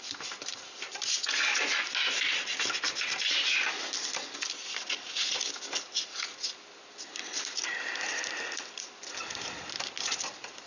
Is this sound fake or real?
real